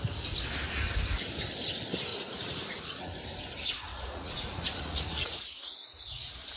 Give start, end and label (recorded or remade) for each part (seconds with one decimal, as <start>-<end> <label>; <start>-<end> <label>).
0.0-2.1 recorded; 2.1-3.2 remade; 3.2-3.9 recorded; 3.9-5.6 remade; 5.6-6.6 recorded